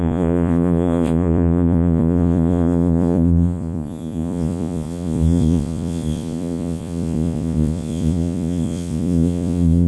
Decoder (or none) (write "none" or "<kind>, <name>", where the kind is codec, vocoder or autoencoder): vocoder, Vocos